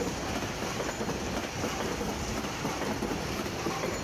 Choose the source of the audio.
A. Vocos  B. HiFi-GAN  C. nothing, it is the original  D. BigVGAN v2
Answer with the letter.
D